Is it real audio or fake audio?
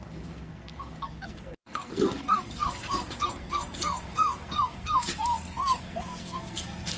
fake